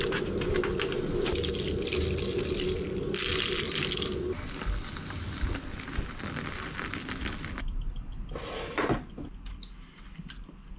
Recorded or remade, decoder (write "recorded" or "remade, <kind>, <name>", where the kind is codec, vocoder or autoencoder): recorded